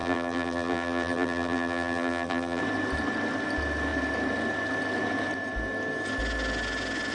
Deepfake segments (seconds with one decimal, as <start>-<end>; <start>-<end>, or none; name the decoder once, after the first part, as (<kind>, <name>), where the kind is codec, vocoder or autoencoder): 0.0-2.6 (vocoder, BigVGAN v2)